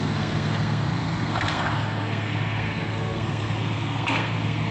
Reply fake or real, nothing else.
fake